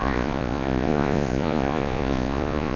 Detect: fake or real fake